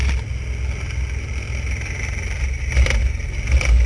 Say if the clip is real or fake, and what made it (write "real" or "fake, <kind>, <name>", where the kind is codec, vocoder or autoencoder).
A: real